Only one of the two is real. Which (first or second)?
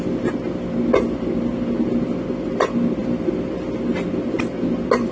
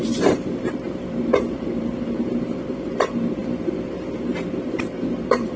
first